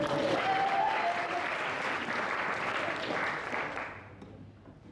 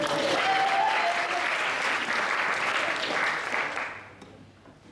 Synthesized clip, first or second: first